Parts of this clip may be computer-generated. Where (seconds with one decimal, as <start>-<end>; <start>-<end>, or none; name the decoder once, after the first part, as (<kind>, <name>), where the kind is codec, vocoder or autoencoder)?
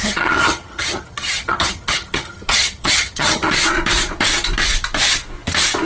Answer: 0.0-3.5 (vocoder, HiFi-GAN)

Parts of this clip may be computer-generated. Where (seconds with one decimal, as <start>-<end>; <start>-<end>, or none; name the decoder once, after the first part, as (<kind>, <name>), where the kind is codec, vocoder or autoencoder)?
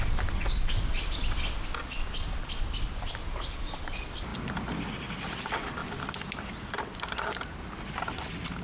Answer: 4.3-4.9 (vocoder, BigVGAN v2); 5.8-7.7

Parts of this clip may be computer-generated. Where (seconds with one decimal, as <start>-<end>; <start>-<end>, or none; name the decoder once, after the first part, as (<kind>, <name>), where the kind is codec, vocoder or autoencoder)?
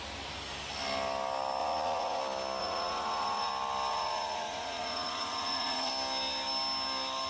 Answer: 1.6-2.2 (vocoder, Vocos); 2.6-3.5; 3.9-5.9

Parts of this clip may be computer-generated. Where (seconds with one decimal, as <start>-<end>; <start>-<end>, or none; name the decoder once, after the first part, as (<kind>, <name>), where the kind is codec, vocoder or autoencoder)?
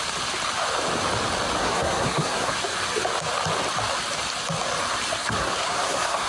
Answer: 1.6-2.5 (codec, SNAC); 5.2-6.3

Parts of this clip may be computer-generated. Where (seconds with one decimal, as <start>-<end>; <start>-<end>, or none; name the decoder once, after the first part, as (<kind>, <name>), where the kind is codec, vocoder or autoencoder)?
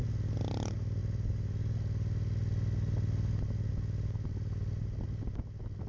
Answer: none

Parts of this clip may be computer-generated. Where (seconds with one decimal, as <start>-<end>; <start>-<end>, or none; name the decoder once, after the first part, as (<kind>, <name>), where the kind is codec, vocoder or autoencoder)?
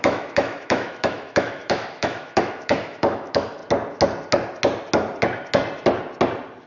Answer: 0.0-3.6 (autoencoder, DAC-VAE)